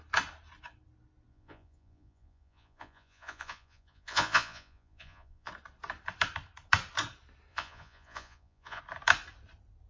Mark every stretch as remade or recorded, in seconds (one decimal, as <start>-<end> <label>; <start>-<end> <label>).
0.0-1.3 recorded; 1.3-5.5 remade; 5.5-7.5 recorded; 7.5-8.8 remade; 8.8-9.9 recorded